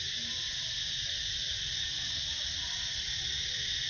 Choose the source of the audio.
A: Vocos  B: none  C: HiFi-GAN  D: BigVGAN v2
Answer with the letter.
B